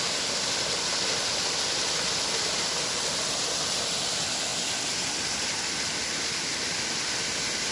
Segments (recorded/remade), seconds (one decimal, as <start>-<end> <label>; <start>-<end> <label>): 0.0-7.7 recorded